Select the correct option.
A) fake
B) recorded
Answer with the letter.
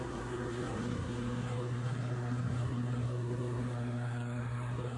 A